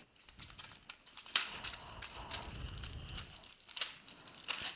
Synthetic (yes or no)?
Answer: yes